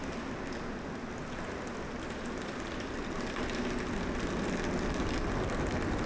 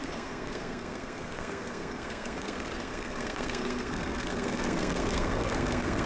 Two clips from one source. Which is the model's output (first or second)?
second